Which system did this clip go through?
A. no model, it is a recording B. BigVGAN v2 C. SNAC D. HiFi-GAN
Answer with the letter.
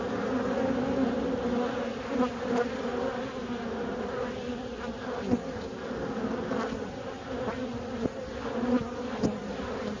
A